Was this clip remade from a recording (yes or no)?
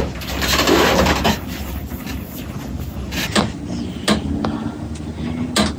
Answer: no